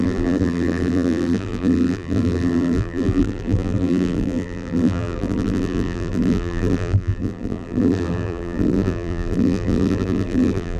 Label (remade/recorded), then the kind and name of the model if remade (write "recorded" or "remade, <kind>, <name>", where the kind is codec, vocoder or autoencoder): remade, vocoder, BigVGAN v2